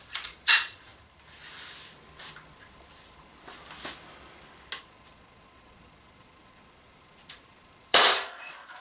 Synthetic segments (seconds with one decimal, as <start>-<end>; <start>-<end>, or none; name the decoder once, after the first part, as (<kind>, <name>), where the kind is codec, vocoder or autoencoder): 0.0-0.9 (vocoder, Vocos); 4.8-8.8